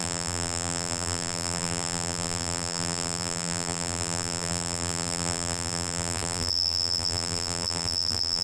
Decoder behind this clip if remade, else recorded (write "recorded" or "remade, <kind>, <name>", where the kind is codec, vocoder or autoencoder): remade, vocoder, BigVGAN v2